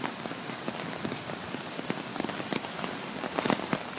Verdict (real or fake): real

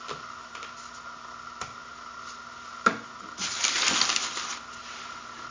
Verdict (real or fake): real